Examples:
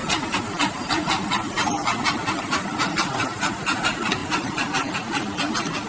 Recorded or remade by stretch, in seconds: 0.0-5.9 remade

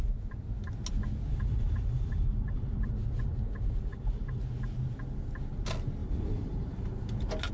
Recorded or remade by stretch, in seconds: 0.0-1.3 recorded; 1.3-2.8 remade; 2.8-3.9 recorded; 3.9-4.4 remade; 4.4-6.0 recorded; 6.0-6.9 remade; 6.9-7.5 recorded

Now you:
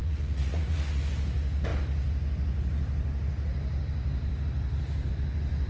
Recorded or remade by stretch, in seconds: 0.0-1.0 remade; 1.0-5.7 recorded

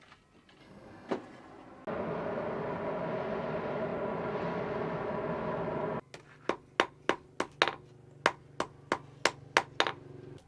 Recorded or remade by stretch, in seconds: 0.0-0.6 recorded; 0.6-1.1 remade; 1.1-10.5 recorded

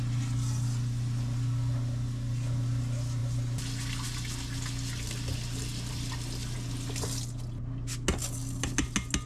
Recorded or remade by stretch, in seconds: 0.0-9.3 recorded